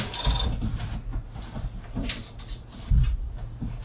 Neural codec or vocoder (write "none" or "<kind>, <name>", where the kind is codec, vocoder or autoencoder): none